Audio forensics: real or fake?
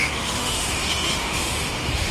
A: fake